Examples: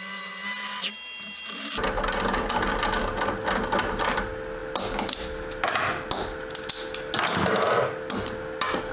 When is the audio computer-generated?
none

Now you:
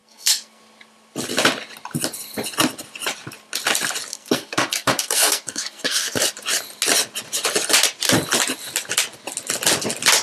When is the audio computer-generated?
0.0-0.6; 4.1-6.2

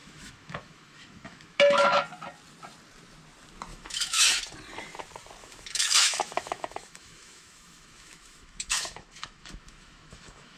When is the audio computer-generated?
0.0-2.0; 3.7-4.4; 5.4-10.6